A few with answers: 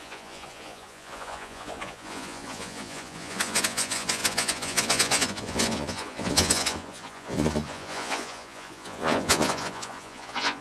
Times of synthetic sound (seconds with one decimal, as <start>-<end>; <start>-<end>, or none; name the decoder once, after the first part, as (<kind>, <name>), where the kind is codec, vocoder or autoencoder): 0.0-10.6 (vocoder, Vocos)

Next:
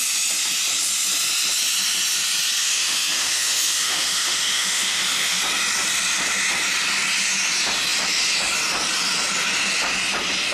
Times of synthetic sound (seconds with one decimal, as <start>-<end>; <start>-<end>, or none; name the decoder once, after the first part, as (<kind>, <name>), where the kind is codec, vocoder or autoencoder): 2.6-5.4 (autoencoder, DAC-VAE)

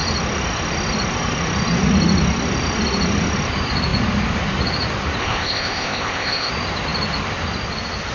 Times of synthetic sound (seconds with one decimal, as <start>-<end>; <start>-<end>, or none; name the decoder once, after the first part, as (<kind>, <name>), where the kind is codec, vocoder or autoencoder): 5.2-6.5 (codec, ZipCodec)